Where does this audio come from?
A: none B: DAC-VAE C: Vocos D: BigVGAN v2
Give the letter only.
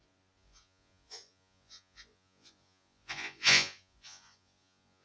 C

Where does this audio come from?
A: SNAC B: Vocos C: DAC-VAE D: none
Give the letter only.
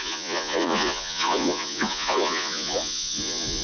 B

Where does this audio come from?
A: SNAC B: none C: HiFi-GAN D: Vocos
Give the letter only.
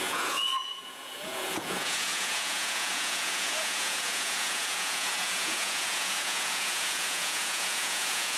D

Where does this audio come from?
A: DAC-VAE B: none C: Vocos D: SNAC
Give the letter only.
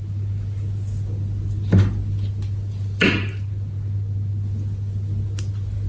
B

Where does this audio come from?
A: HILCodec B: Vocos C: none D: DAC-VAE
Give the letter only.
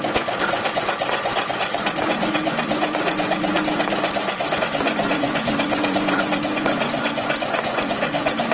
B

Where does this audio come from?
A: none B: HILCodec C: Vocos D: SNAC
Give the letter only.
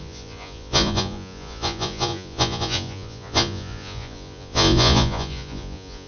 C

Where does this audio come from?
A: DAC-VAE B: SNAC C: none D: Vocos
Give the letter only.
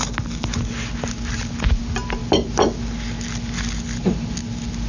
C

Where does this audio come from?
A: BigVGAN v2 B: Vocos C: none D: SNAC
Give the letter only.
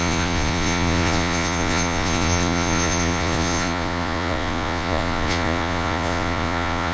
B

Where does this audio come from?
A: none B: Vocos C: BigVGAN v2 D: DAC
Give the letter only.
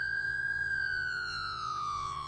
B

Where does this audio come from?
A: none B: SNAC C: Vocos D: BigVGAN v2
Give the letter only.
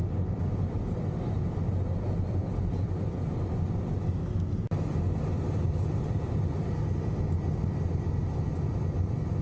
A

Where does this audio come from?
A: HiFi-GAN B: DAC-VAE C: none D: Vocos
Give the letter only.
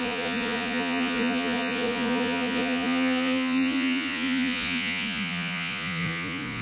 D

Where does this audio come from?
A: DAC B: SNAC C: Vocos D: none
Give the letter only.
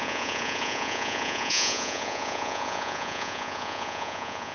C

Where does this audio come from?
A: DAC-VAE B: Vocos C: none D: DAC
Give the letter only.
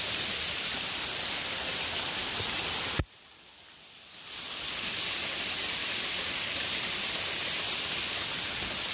C